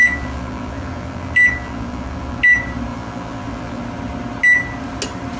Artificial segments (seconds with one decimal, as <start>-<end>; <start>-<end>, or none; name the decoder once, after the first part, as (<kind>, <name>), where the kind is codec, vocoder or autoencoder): 0.0-2.4 (vocoder, BigVGAN v2); 2.9-3.8